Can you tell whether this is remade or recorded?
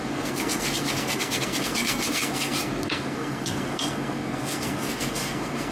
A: remade